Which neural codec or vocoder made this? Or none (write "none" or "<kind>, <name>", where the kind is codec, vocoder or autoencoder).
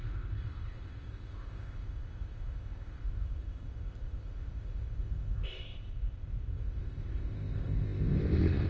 codec, ZipCodec